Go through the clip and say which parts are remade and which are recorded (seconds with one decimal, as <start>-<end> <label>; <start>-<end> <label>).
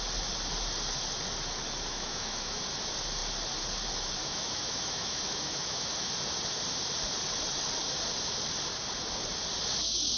0.0-1.9 recorded; 1.9-2.6 remade; 2.6-4.2 recorded; 4.2-6.1 remade; 6.1-10.2 recorded